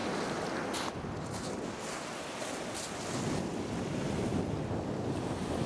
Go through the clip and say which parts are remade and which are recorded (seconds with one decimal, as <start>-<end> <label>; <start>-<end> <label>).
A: 0.0-5.7 recorded